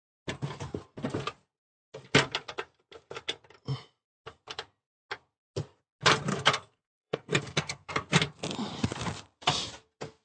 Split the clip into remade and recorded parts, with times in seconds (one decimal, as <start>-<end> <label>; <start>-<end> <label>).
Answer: 0.0-6.3 recorded; 6.3-7.9 remade; 7.9-10.2 recorded